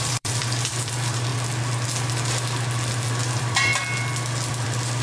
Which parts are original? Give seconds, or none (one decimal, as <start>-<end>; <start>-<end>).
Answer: 1.3-3.1; 3.7-4.5